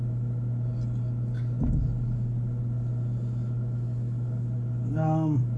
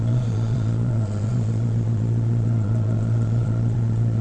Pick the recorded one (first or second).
first